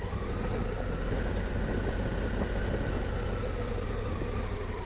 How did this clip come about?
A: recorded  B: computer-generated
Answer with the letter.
A